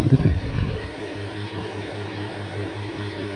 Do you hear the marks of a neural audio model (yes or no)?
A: yes